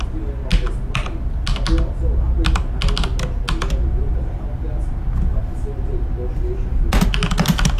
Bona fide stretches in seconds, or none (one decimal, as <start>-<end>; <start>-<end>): 0.0-7.8